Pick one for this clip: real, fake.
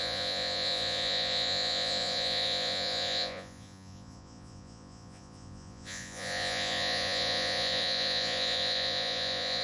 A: fake